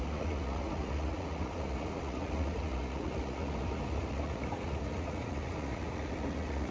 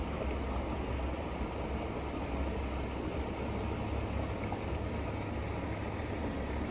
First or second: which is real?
second